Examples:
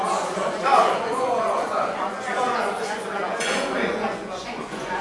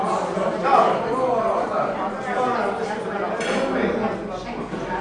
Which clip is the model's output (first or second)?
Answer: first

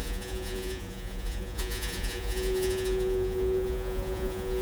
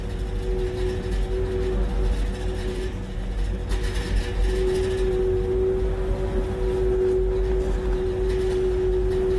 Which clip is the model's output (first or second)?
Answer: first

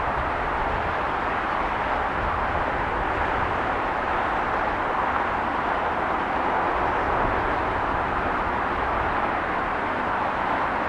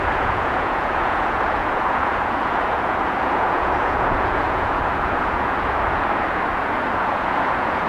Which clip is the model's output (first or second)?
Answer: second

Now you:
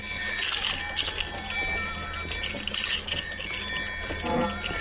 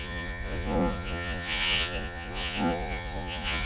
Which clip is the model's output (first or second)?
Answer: second